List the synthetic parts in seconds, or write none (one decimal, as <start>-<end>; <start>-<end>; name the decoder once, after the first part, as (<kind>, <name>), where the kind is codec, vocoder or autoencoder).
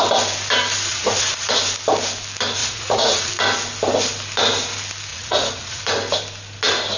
0.9-1.6 (vocoder, Vocos); 2.6-3.3; 5.1-5.8